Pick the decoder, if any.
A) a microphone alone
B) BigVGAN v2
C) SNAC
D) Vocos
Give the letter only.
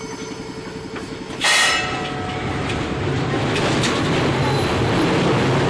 A